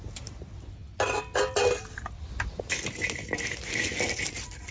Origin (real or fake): real